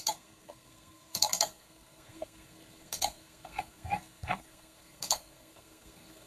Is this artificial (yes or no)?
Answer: yes